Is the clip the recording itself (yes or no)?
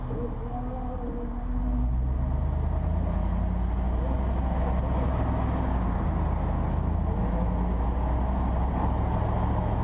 yes